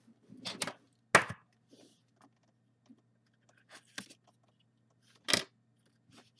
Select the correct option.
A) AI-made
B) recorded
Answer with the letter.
B